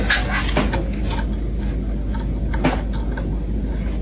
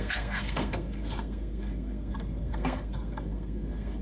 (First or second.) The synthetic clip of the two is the second